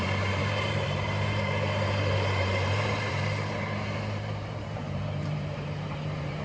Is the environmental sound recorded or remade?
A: remade